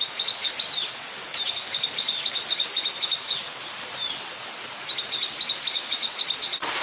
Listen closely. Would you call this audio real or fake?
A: real